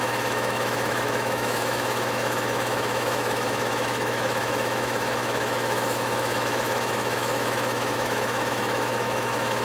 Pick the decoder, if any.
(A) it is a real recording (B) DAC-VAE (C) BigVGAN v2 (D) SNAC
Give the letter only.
B